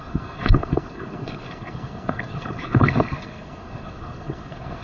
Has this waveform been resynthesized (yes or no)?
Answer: yes